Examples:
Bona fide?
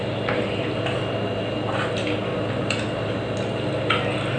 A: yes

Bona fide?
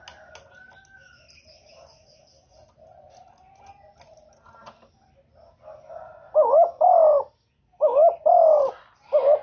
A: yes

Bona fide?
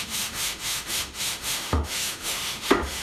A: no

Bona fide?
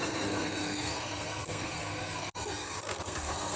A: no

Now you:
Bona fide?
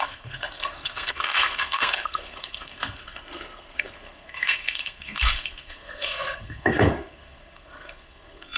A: no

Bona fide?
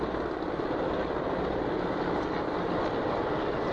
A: yes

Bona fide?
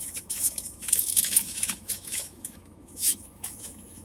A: no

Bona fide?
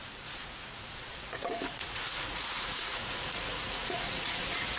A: no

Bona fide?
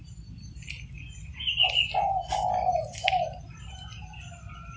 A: yes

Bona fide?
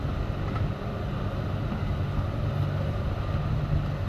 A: yes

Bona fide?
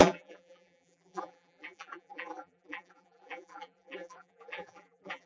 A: no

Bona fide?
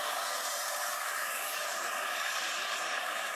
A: no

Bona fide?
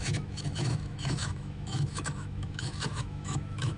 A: no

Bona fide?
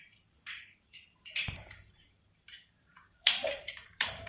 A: no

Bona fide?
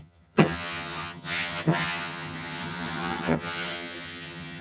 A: no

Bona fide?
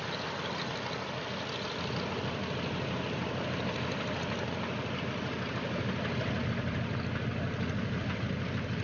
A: yes